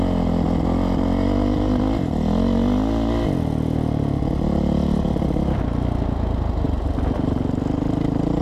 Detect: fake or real real